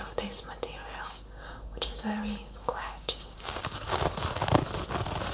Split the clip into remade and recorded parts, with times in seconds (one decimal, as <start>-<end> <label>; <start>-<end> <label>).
0.0-0.8 recorded; 0.8-4.0 remade; 4.0-5.3 recorded